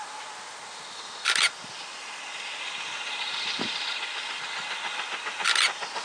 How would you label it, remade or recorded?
recorded